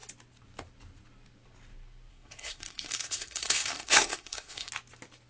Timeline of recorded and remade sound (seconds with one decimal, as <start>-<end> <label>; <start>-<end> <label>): 0.0-2.1 recorded; 2.1-4.7 remade; 4.7-5.3 recorded